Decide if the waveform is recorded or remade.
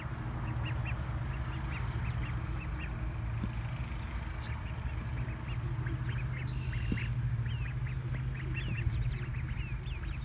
recorded